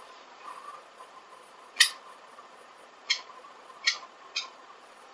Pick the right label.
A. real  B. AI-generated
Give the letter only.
B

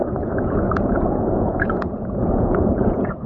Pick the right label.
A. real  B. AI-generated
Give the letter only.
B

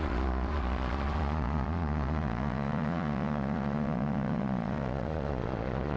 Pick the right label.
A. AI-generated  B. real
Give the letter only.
A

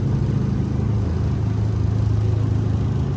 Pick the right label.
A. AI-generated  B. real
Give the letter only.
B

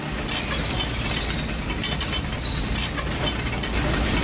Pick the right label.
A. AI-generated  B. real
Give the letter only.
B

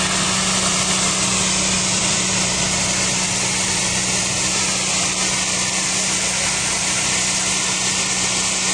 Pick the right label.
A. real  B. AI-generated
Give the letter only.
A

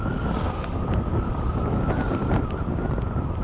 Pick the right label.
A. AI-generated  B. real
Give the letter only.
B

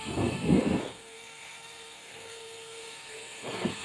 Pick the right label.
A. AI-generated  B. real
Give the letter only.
A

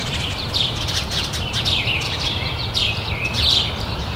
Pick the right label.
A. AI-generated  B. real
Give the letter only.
A